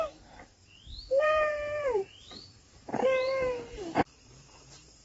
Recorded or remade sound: remade